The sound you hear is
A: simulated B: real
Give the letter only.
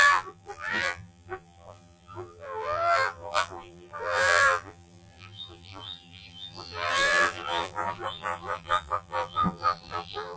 A